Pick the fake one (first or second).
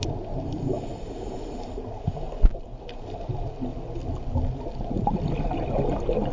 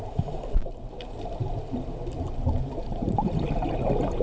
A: second